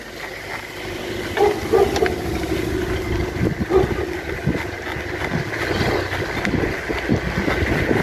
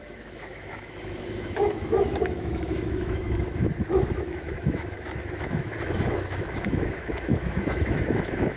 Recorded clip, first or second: first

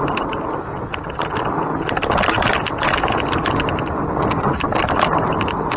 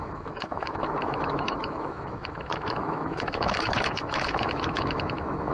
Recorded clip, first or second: first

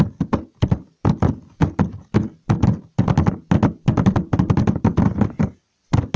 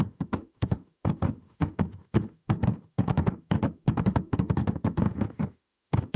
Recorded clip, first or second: first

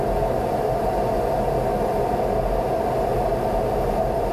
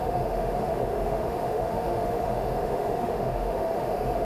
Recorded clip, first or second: first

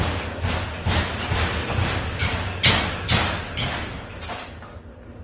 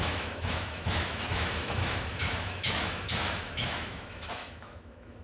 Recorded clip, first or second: first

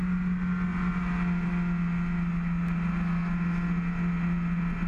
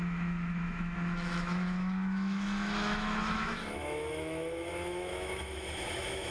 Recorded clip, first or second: first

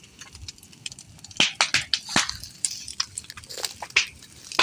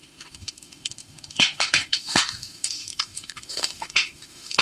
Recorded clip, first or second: first